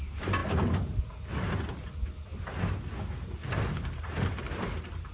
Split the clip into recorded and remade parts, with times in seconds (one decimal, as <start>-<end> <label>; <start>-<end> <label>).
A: 0.0-5.1 recorded